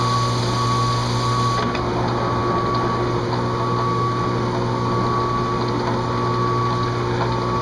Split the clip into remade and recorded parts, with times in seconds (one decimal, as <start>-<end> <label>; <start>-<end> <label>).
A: 0.0-7.6 recorded